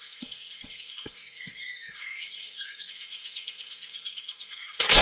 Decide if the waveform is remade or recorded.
remade